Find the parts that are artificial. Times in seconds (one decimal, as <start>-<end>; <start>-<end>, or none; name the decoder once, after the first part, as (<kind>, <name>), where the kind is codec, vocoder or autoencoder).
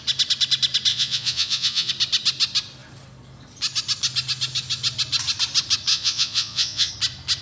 0.9-1.9 (vocoder, Vocos); 5.9-6.9